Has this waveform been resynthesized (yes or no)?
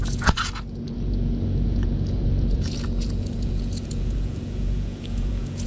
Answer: yes